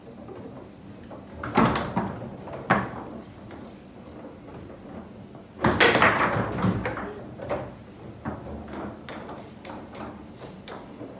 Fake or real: real